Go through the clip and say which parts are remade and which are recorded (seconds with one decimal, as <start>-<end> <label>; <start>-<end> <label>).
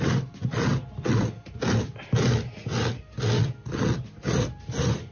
0.0-5.1 recorded